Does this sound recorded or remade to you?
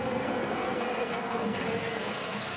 remade